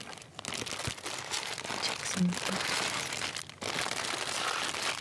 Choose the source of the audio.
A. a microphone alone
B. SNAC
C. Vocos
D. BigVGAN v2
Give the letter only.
A